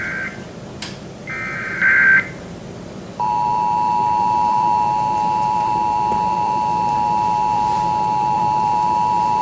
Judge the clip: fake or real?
fake